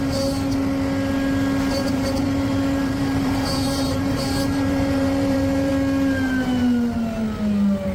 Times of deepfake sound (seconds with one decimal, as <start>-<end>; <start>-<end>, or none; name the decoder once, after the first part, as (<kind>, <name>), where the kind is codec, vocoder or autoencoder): 1.8-5.7 (vocoder, BigVGAN v2)